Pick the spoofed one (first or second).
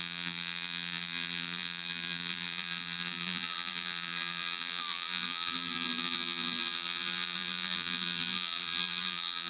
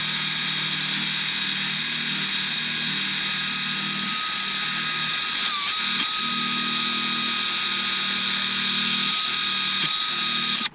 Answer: first